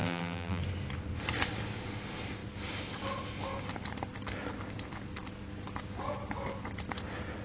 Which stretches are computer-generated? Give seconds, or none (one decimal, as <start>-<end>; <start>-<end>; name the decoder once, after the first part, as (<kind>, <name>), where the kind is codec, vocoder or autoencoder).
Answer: 0.0-0.6 (vocoder, BigVGAN v2)